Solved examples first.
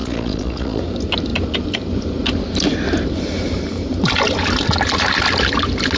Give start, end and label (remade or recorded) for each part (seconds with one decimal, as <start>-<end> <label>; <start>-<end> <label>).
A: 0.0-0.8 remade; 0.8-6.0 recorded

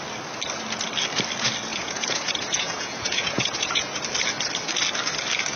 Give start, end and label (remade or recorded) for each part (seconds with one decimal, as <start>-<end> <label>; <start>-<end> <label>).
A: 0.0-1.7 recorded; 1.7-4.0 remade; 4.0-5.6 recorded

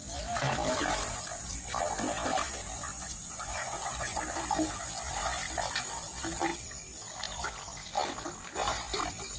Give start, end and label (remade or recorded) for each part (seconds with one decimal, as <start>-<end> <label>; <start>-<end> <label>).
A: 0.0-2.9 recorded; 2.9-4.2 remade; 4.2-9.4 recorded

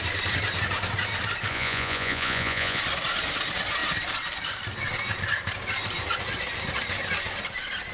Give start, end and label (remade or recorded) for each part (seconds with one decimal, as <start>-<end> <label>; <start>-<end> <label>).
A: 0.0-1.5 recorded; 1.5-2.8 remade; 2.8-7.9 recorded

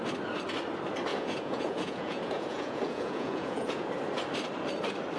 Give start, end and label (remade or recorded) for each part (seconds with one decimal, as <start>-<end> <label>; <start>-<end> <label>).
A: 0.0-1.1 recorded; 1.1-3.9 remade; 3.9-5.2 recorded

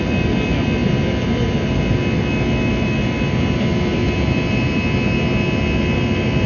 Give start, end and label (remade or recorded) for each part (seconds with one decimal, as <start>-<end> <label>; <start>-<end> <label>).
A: 0.0-6.5 recorded

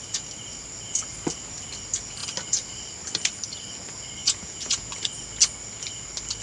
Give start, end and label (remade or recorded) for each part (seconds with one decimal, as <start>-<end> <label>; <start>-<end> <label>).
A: 0.0-4.2 recorded; 4.2-4.9 remade; 4.9-6.4 recorded

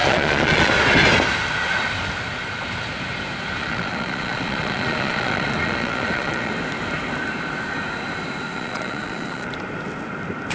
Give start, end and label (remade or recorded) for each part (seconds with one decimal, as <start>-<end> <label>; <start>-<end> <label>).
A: 0.0-0.7 remade; 0.7-3.6 recorded; 3.6-6.5 remade; 6.5-8.5 recorded; 8.5-9.5 remade; 9.5-10.5 recorded